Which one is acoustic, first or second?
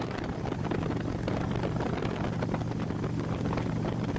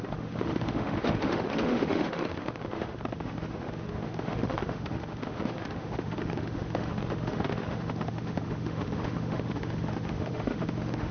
first